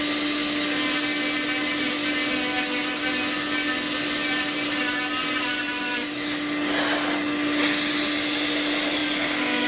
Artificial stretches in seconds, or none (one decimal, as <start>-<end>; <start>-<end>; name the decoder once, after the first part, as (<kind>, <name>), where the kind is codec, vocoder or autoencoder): none